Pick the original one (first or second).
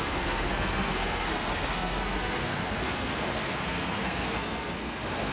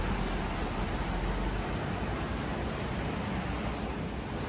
second